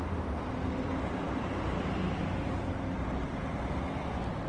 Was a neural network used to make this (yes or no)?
no